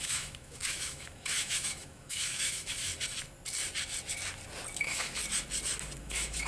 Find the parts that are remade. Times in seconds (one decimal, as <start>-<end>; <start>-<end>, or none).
0.0-2.9; 4.8-5.2; 6.0-6.5